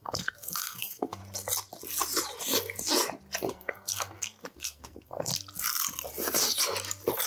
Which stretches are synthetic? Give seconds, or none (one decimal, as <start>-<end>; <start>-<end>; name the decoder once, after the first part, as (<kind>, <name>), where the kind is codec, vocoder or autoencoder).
0.0-1.2 (codec, SNAC); 3.5-5.3